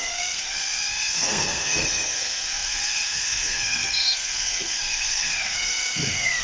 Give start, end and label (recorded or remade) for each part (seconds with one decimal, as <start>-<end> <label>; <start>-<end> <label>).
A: 0.0-6.4 remade